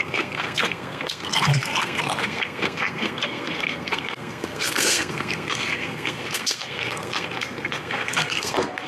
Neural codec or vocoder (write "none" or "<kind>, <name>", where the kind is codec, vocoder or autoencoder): codec, SNAC